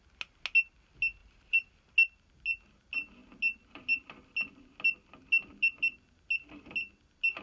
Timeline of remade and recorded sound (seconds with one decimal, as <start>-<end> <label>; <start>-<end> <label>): 0.0-1.2 recorded; 1.2-1.7 remade; 1.7-7.4 recorded